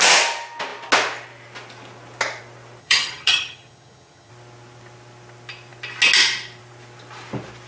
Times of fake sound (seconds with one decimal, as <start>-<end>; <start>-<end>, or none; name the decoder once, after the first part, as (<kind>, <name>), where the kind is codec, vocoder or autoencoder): 2.8-4.3 (vocoder, HiFi-GAN)

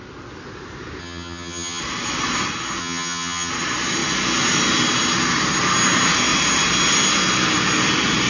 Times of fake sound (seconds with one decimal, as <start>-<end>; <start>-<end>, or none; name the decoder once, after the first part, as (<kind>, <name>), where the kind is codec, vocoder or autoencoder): 1.0-1.8 (vocoder, HiFi-GAN); 2.8-3.5